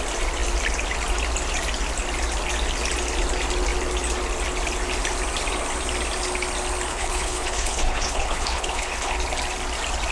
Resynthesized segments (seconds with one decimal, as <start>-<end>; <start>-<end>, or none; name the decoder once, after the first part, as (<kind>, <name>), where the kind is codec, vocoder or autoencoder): 6.9-9.1 (codec, HILCodec)